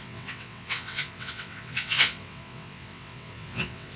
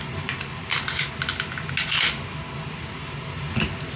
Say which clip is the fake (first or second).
first